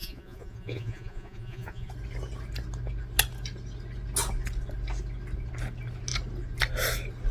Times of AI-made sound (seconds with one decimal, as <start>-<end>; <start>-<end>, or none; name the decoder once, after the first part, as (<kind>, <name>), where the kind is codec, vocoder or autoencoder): 0.0-1.9 (vocoder, Vocos)